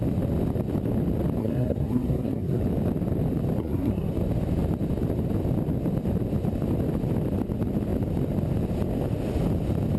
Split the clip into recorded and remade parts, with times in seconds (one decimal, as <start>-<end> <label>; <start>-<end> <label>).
0.0-1.4 recorded; 1.4-2.6 remade; 2.6-3.6 recorded; 3.6-4.1 remade; 4.1-10.0 recorded